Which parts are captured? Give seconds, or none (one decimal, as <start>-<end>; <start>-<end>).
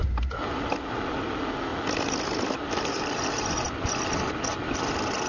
0.0-5.3